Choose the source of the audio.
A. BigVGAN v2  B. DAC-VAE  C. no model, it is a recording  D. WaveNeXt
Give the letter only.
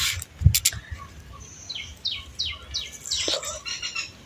C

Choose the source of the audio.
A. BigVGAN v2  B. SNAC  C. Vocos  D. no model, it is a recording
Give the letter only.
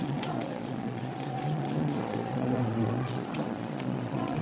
C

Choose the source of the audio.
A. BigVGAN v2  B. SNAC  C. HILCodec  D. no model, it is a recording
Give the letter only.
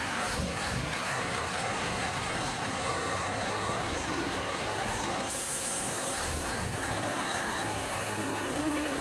B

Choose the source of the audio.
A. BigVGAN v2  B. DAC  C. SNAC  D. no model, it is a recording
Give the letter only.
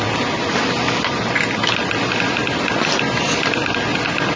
D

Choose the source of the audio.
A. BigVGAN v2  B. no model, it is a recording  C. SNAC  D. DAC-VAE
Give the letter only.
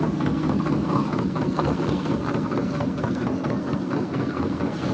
C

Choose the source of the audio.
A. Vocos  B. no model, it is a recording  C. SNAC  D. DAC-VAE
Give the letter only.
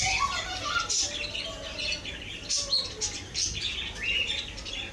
B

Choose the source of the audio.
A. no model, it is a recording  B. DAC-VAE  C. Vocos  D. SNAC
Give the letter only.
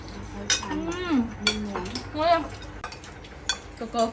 A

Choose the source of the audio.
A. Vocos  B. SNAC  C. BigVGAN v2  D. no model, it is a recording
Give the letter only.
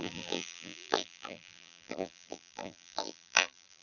C